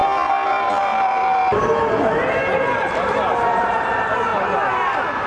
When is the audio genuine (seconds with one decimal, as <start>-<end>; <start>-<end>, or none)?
1.4-3.6; 4.3-5.3